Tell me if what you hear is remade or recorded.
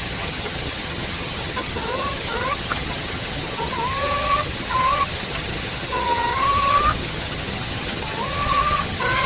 remade